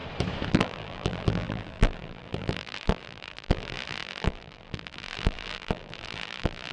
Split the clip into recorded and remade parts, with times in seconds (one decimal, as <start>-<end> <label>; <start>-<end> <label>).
0.0-0.5 recorded; 0.5-6.7 remade